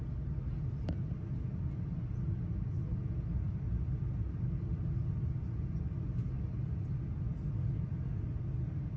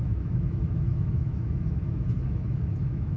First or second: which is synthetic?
second